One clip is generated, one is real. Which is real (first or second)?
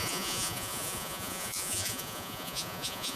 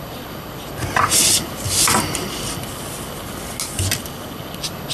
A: second